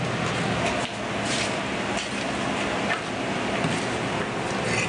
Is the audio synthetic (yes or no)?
no